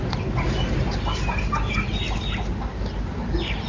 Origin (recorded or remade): recorded